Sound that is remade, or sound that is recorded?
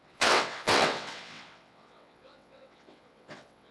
remade